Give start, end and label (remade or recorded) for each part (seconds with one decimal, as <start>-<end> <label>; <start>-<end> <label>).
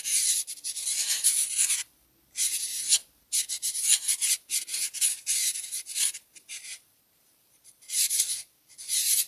0.0-0.9 recorded; 0.9-1.7 remade; 1.7-3.0 recorded; 3.0-8.2 remade; 8.2-9.3 recorded